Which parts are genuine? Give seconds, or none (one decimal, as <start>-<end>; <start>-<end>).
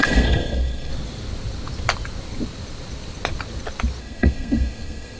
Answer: 0.9-4.0